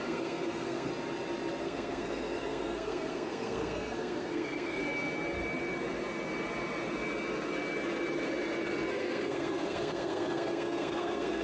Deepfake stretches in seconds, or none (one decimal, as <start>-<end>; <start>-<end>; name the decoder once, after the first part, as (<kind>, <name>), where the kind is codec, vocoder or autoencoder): 0.0-0.9 (codec, SNAC); 1.6-4.8; 8.9-11.4